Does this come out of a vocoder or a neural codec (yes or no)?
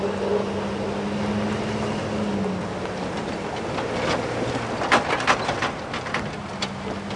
no